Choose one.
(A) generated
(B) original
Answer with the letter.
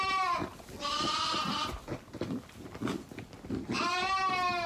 B